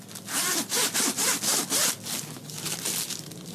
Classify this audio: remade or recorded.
recorded